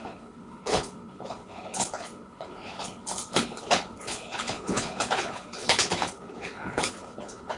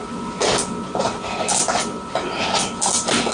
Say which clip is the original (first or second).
second